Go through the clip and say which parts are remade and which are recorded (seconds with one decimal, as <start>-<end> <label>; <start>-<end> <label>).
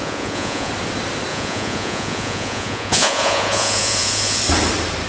0.0-0.7 remade; 0.7-1.3 recorded; 1.3-4.4 remade; 4.4-5.1 recorded